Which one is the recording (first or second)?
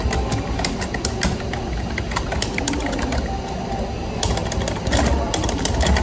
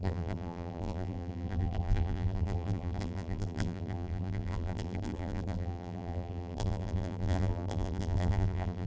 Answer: first